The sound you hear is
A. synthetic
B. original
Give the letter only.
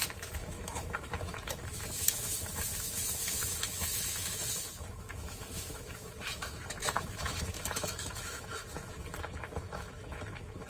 A